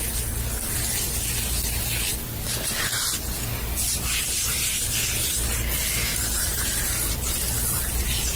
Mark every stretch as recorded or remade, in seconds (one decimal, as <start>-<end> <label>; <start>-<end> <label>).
0.0-6.1 recorded; 6.1-8.4 remade

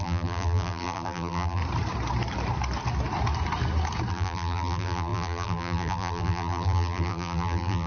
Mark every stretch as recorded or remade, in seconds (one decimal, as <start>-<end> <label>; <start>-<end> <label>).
0.0-1.6 remade; 1.6-4.1 recorded; 4.1-7.9 remade

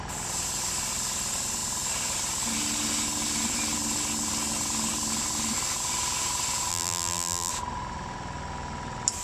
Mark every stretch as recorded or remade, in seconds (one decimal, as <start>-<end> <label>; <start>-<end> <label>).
0.0-6.7 recorded; 6.7-7.5 remade; 7.5-9.2 recorded

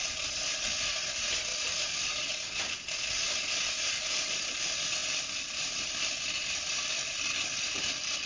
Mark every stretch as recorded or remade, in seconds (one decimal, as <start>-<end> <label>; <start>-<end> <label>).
0.0-5.0 recorded; 5.0-7.8 remade; 7.8-8.3 recorded

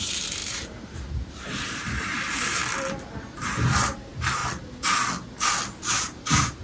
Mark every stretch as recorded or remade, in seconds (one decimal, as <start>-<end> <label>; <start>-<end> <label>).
0.0-2.6 remade; 2.6-3.2 recorded; 3.2-4.4 remade; 4.4-5.8 recorded; 5.8-6.6 remade

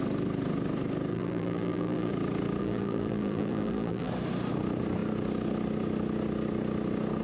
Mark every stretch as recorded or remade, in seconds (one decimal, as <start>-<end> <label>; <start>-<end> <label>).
0.0-1.1 recorded; 1.1-2.1 remade; 2.1-2.6 recorded; 2.6-4.1 remade; 4.1-7.2 recorded

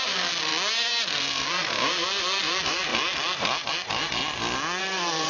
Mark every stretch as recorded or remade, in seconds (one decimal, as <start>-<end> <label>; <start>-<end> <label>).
0.0-0.5 remade; 0.5-1.2 recorded; 1.2-4.2 remade; 4.2-4.8 recorded; 4.8-5.3 remade